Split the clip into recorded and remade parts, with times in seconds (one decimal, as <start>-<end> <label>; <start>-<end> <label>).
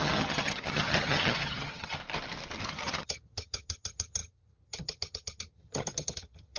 0.0-2.0 remade; 2.0-2.7 recorded; 2.7-6.6 remade